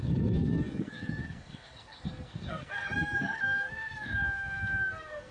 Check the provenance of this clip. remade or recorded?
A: remade